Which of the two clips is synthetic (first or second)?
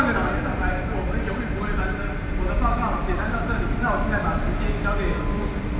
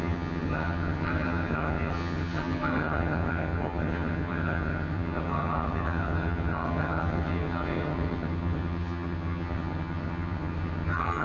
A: second